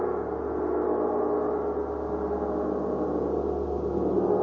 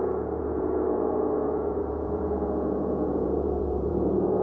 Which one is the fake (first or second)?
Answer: second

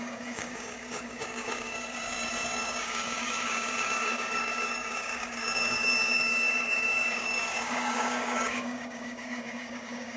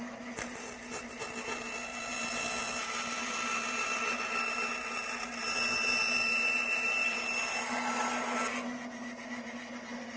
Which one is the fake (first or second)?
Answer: first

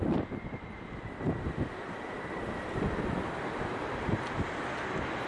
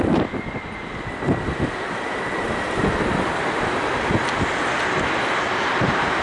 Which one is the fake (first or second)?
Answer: first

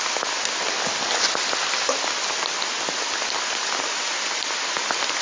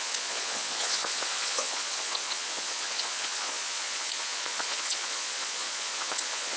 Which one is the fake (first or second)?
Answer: second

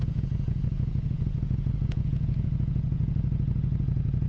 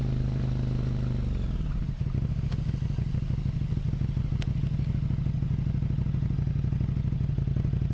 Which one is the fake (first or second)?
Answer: first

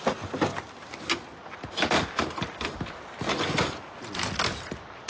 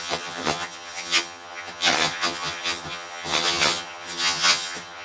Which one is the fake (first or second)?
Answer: second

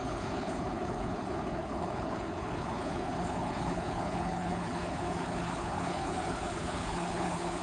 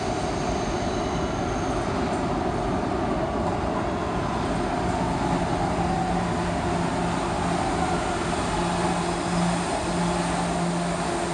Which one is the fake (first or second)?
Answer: first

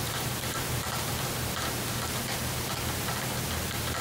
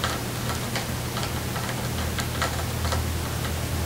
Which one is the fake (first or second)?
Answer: first